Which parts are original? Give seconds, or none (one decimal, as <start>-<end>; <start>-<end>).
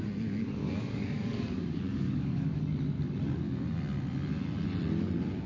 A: 0.0-0.6; 2.6-5.5